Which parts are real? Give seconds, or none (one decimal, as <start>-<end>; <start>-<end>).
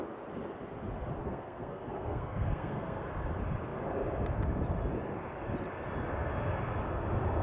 0.0-1.2; 3.1-7.4